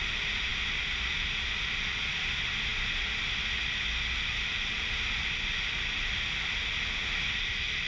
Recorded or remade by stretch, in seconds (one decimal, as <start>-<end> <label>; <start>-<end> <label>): 0.0-7.9 recorded